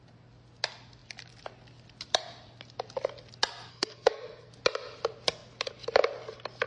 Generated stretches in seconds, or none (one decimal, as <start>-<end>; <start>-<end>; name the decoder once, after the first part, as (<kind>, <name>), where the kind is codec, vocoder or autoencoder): 3.7-4.5 (codec, SNAC)

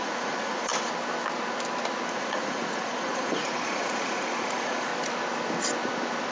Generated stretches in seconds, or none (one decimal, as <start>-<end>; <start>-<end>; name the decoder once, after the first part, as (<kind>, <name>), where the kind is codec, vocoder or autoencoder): 0.0-0.7 (vocoder, Vocos); 2.1-4.9

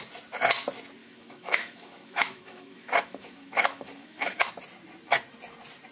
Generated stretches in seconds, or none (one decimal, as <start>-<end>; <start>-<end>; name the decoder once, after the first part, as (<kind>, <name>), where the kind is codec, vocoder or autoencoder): 1.0-4.5 (autoencoder, DAC-VAE)

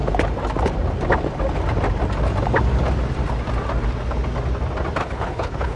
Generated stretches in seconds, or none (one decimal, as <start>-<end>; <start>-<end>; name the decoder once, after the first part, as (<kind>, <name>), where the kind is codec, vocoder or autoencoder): 5.0-5.8 (codec, HILCodec)

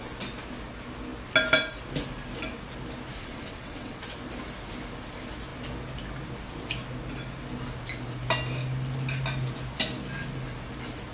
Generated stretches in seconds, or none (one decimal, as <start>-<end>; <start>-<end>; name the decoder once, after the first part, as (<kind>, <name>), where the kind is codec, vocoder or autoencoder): 3.2-4.0 (vocoder, WaveNeXt)

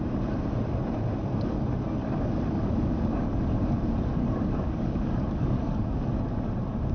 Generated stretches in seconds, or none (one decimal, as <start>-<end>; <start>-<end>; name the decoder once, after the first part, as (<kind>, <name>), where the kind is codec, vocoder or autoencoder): 2.0-6.1 (codec, DAC)